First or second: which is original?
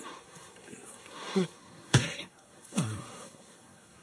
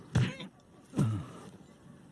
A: second